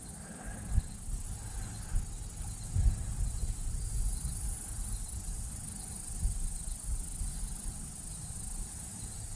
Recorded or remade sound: recorded